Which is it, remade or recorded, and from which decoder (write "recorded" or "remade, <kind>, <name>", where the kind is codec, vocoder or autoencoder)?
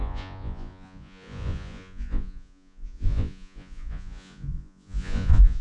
remade, vocoder, Vocos